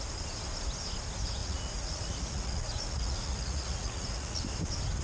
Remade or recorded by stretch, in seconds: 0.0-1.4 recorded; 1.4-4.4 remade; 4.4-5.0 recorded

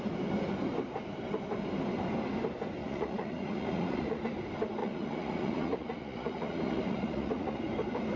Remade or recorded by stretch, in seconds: 0.0-2.8 recorded; 2.8-4.2 remade; 4.2-4.8 recorded; 4.8-7.6 remade; 7.6-8.2 recorded

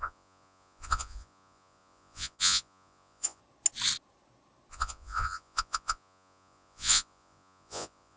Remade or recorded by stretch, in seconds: 0.0-3.4 remade; 3.4-4.7 recorded; 4.7-8.2 remade

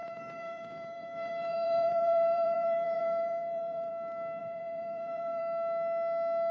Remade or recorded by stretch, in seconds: 0.0-3.9 remade; 3.9-4.4 recorded; 4.4-5.4 remade; 5.4-6.5 recorded

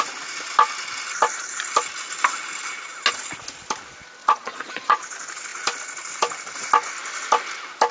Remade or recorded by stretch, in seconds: 0.0-4.2 recorded; 4.2-5.0 remade; 5.0-7.9 recorded